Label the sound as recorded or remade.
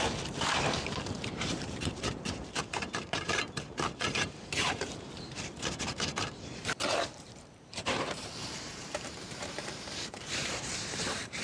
remade